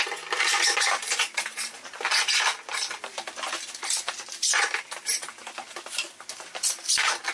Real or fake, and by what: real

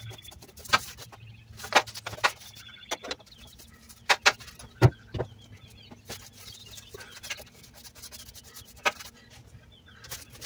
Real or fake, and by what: real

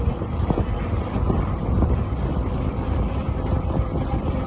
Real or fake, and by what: real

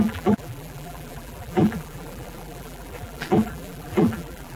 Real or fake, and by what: fake, vocoder, BigVGAN v2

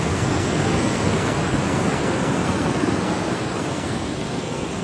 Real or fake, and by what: fake, codec, SNAC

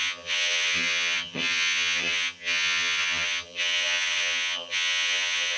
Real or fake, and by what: fake, vocoder, HiFi-GAN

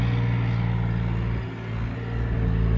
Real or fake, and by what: real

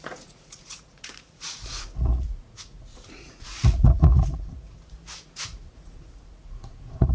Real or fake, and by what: fake, vocoder, Vocos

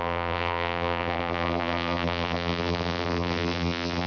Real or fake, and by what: fake, vocoder, BigVGAN v2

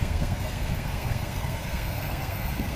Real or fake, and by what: fake, codec, SNAC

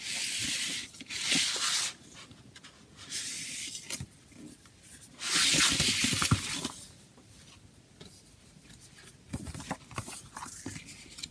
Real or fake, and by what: real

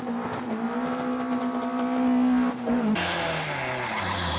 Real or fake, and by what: real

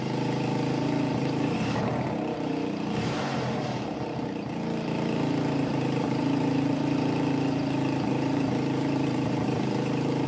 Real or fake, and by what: fake, vocoder, BigVGAN v2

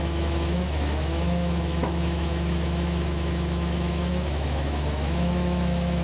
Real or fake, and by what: fake, autoencoder, DAC-VAE